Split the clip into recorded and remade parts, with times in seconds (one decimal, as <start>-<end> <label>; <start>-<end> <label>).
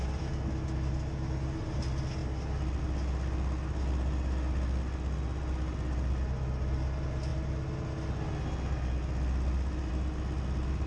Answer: 0.0-10.9 recorded